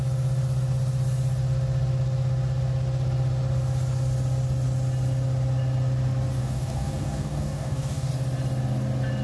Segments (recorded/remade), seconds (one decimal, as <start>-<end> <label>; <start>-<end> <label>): 0.0-6.4 recorded; 6.4-8.1 remade; 8.1-9.2 recorded